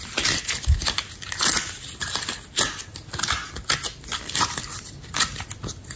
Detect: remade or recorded recorded